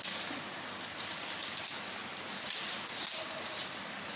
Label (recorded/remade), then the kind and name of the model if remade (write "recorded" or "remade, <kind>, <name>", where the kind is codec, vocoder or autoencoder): recorded